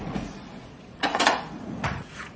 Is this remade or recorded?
remade